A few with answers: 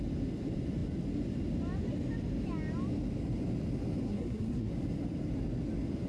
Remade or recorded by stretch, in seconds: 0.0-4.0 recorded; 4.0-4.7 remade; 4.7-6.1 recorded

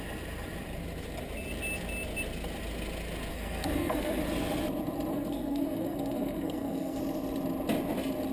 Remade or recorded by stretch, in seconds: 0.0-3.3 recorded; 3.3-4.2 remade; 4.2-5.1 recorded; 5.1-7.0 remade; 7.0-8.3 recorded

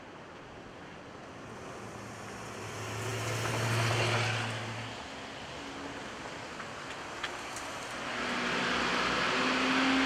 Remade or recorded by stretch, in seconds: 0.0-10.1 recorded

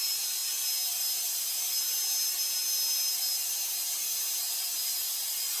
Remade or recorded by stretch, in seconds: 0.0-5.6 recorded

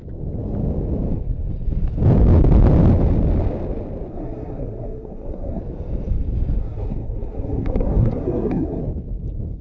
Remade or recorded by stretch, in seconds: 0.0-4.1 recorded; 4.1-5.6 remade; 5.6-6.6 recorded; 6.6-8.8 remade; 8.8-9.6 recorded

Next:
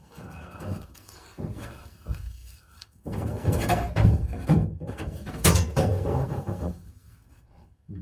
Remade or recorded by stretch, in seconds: 0.0-8.0 remade

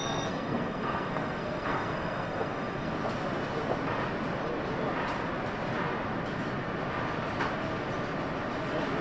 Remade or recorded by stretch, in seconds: 0.0-2.9 remade; 2.9-9.0 recorded

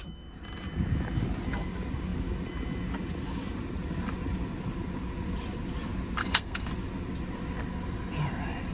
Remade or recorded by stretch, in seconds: 0.0-6.2 recorded; 6.2-6.7 remade; 6.7-8.7 recorded